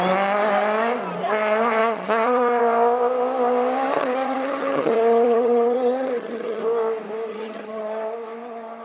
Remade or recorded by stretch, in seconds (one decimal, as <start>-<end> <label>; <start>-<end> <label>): 0.0-1.8 recorded; 1.8-2.6 remade; 2.6-4.0 recorded; 4.0-6.6 remade; 6.6-7.3 recorded; 7.3-7.8 remade; 7.8-8.8 recorded